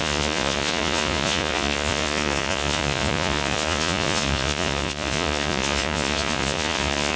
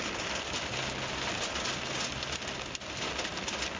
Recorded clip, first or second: second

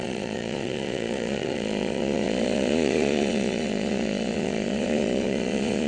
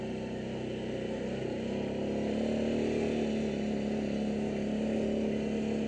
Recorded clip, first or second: second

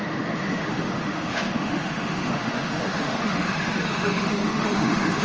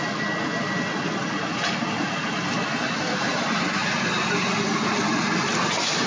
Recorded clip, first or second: second